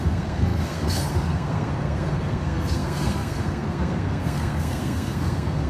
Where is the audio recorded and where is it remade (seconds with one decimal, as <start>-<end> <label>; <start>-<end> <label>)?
0.0-5.7 remade